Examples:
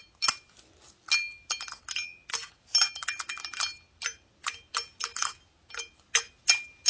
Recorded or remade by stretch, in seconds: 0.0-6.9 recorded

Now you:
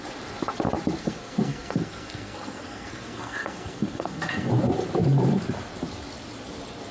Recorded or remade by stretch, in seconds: 0.0-1.0 recorded; 1.0-4.5 remade; 4.5-6.9 recorded

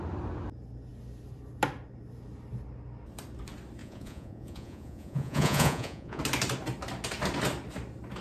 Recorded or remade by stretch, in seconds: 0.0-3.8 recorded; 3.8-6.2 remade; 6.2-8.2 recorded

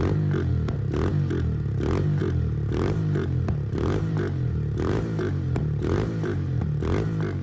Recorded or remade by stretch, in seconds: 0.0-2.2 recorded; 2.2-6.6 remade; 6.6-7.4 recorded

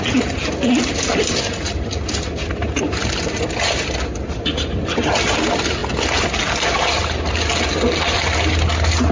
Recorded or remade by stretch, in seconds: 0.0-9.1 recorded

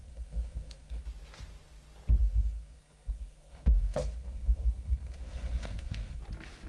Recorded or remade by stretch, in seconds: 0.0-1.0 remade; 1.0-2.2 recorded; 2.2-6.2 remade; 6.2-6.7 recorded

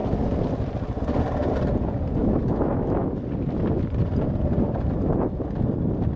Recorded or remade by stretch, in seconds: 0.0-2.2 recorded; 2.2-3.1 remade; 3.1-6.2 recorded